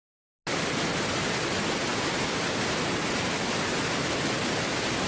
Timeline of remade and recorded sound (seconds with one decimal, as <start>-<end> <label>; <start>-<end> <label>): 0.0-5.1 recorded